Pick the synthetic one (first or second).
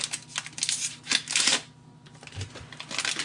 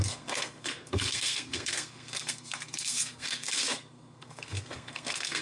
second